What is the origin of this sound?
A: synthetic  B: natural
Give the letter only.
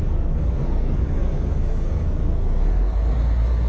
A